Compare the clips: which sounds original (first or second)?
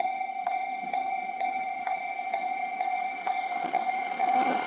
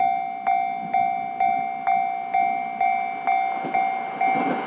second